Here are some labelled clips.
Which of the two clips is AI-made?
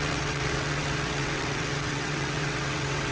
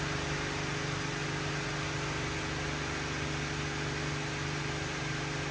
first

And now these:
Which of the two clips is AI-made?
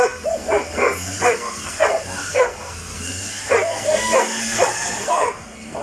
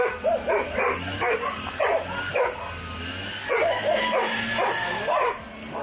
first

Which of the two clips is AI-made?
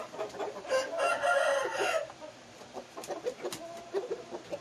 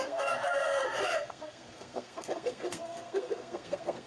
second